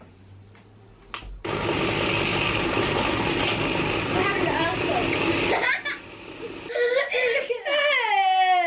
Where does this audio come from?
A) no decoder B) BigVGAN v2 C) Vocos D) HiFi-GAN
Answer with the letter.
A